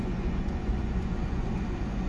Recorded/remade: remade